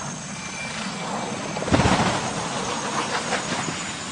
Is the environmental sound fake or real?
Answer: real